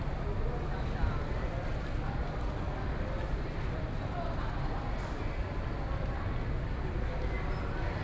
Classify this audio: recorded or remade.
recorded